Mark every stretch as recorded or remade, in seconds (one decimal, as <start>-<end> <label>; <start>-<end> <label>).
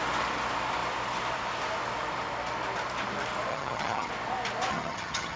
0.0-3.5 recorded; 3.5-4.1 remade; 4.1-4.7 recorded; 4.7-5.4 remade